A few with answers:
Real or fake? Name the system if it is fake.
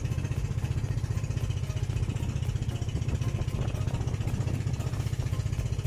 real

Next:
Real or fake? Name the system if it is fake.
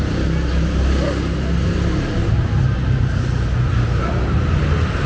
real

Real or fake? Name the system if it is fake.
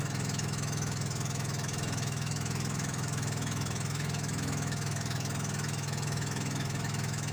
fake, autoencoder, DAC-VAE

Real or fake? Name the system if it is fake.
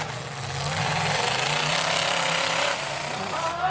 real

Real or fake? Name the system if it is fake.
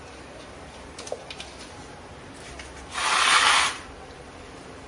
fake, vocoder, BigVGAN v2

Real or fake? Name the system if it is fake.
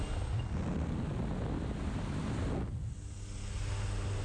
real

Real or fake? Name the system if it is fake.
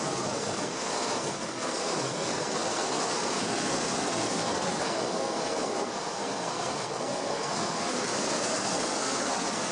fake, codec, SNAC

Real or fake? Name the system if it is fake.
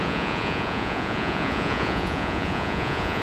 fake, vocoder, Vocos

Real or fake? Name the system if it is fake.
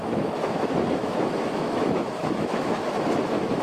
fake, autoencoder, DAC-VAE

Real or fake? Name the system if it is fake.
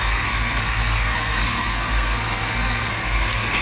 fake, codec, SNAC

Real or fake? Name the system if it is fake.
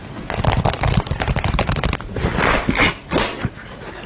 real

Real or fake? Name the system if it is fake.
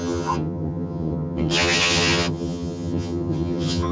fake, vocoder, HiFi-GAN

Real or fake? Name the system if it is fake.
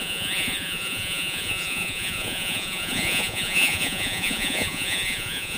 fake, vocoder, Vocos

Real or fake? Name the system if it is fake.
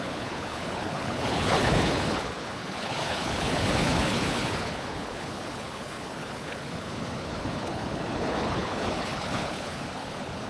fake, codec, HILCodec